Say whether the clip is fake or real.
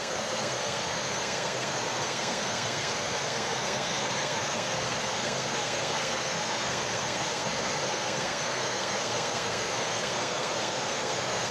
fake